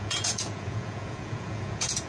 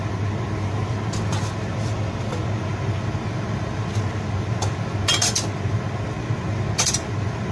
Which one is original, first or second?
second